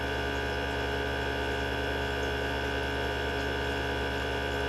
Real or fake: real